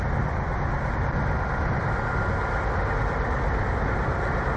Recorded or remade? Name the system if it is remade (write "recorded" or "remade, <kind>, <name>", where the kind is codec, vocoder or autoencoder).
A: recorded